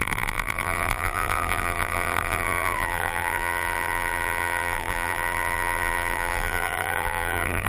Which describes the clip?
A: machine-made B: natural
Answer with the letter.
A